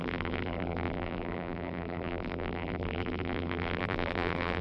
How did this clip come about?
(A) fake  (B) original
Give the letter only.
A